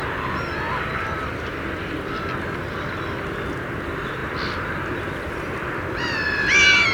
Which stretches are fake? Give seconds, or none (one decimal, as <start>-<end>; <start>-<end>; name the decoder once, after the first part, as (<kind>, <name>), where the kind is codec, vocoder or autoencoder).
none